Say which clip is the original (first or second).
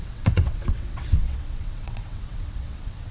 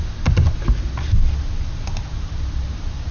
second